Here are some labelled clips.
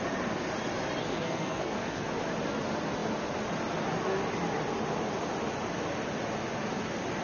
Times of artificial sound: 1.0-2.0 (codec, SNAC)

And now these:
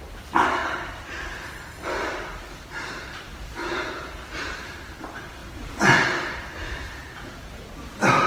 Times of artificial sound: 3.6-4.4 (vocoder, Vocos); 5.4-6.0; 7.0-7.7

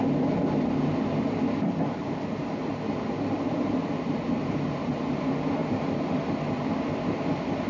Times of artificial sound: 2.0-2.5 (vocoder, BigVGAN v2); 5.6-6.3

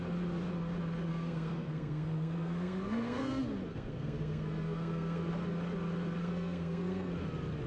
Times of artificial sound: 1.1-3.3 (codec, SNAC); 3.7-5.3; 6.2-7.1

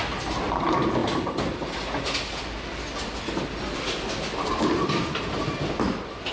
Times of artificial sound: none